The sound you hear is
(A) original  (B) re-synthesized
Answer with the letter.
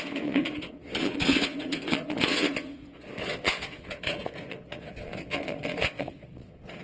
B